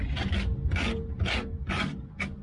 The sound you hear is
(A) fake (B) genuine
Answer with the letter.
B